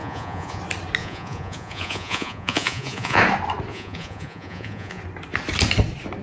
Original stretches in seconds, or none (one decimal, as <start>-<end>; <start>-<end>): 0.6-1.0; 3.2-3.7; 5.0-6.2